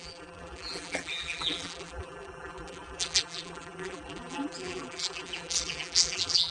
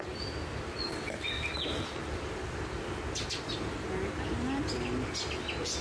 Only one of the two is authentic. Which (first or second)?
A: second